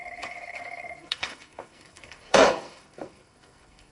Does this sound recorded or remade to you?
remade